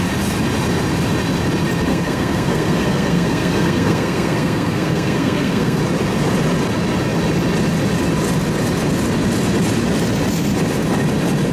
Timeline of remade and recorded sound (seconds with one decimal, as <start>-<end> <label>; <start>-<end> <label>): 0.0-1.9 recorded; 1.9-5.8 remade; 5.8-11.5 recorded